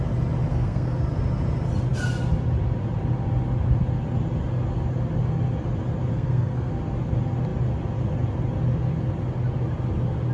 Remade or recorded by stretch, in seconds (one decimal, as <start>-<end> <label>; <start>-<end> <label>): 0.0-0.5 recorded; 0.5-1.0 remade; 1.0-6.1 recorded; 6.1-6.7 remade; 6.7-10.3 recorded